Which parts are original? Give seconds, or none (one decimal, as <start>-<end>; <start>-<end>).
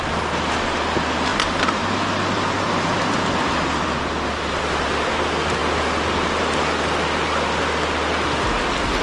0.0-1.3; 4.6-9.0